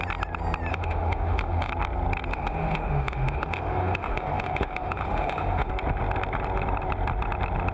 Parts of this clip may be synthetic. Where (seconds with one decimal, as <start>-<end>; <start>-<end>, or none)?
0.7-1.7; 2.3-5.7

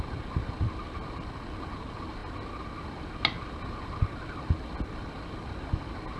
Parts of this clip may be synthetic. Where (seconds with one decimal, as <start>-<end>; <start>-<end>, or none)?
none

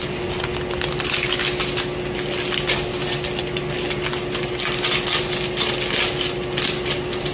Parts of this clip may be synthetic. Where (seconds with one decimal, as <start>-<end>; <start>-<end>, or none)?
none

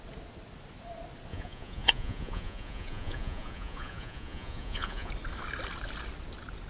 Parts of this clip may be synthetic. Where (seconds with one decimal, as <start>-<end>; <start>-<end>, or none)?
1.3-5.1